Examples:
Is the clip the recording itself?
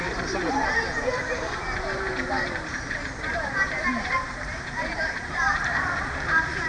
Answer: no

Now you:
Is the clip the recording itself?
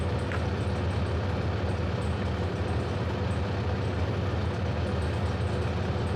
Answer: yes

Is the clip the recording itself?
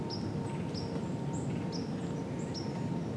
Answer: yes